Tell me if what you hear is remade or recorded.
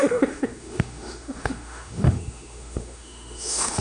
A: remade